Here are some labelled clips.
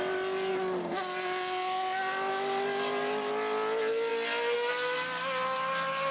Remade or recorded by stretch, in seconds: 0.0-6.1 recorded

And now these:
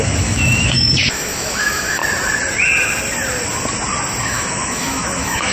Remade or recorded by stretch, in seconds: 0.0-2.0 remade; 2.0-4.2 recorded; 4.2-5.5 remade

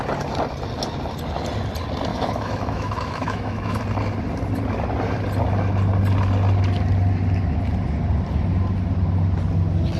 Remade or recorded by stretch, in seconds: 0.0-2.1 recorded; 2.1-3.8 remade; 3.8-10.0 recorded

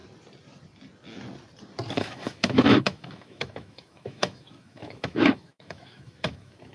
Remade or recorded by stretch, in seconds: 0.0-1.9 recorded; 1.9-6.7 remade

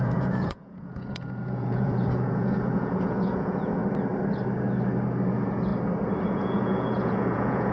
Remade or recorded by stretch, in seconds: 0.0-3.8 remade; 3.8-5.3 recorded; 5.3-5.7 remade; 5.7-6.2 recorded; 6.2-7.7 remade

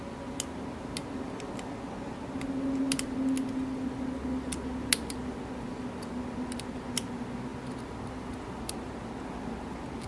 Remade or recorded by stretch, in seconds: 0.0-10.1 recorded

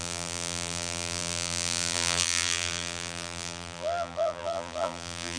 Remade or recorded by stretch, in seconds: 0.0-5.4 remade